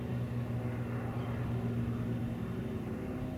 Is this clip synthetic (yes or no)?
no